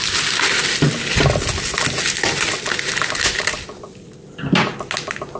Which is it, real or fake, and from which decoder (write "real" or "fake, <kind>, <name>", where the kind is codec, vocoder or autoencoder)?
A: real